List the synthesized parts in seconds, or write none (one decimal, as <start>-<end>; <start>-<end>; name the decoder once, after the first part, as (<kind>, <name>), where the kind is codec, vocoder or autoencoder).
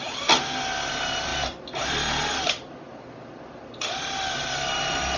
none